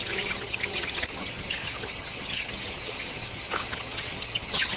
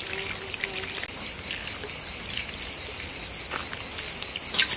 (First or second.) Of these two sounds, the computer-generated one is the first